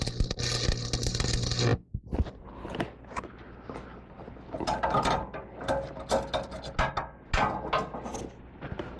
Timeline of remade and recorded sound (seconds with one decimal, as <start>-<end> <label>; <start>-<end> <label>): 0.0-9.0 recorded